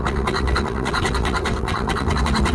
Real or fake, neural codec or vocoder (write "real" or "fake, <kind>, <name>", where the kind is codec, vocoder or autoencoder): fake, vocoder, WaveNeXt